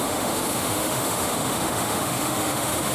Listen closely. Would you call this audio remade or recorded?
remade